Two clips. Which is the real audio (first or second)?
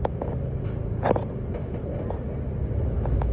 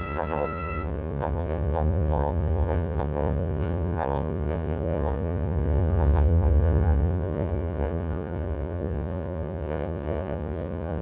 first